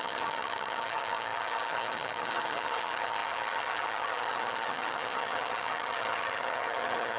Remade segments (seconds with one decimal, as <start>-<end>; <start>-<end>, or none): 0.0-7.2